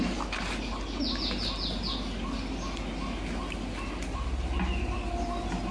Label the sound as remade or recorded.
recorded